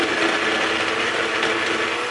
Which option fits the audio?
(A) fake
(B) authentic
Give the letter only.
B